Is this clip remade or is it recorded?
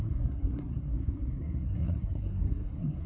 remade